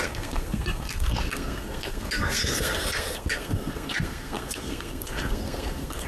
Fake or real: fake